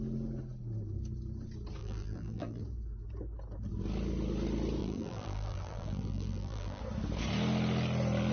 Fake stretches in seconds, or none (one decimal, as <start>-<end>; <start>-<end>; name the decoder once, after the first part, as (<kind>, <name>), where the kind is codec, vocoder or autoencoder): 1.8-2.6 (vocoder, BigVGAN v2); 4.8-6.8